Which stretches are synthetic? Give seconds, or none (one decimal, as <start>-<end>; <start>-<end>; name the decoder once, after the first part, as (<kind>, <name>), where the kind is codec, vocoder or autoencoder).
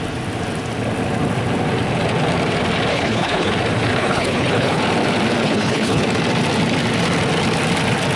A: 2.9-3.5 (codec, HILCodec); 4.0-4.8; 5.4-6.0